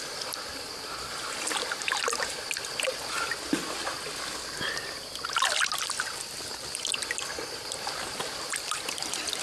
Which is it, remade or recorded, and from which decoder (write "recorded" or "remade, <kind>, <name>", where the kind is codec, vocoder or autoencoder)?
recorded